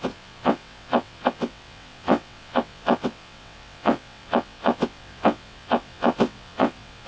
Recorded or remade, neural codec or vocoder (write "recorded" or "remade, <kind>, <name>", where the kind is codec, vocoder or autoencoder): remade, vocoder, WaveNeXt